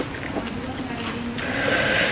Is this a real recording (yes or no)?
yes